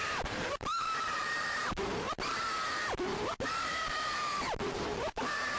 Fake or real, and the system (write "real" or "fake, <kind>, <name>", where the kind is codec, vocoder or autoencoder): fake, vocoder, BigVGAN v2